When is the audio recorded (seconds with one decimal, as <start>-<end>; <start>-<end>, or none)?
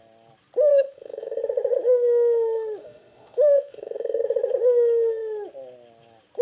0.0-0.7; 1.4-2.8; 4.2-6.4